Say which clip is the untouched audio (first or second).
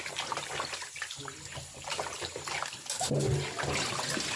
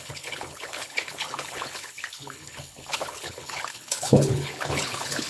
first